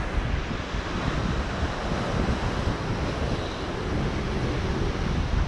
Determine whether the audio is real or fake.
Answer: real